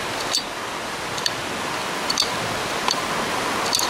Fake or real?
real